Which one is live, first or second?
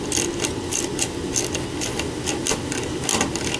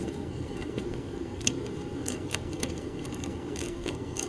first